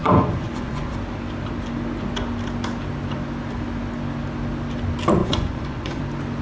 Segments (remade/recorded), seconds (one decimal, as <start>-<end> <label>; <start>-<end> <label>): 0.0-0.9 remade; 0.9-5.2 recorded; 5.2-6.0 remade; 6.0-6.4 recorded